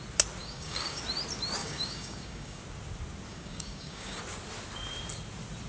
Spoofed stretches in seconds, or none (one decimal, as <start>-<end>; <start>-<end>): 0.4-1.0; 1.6-2.6; 3.3-4.2